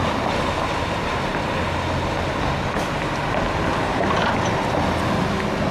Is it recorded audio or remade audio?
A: recorded